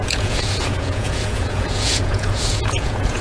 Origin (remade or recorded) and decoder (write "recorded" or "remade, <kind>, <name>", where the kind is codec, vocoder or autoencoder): remade, vocoder, Vocos